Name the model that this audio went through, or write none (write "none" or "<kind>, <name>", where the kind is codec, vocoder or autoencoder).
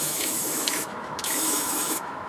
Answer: autoencoder, DAC-VAE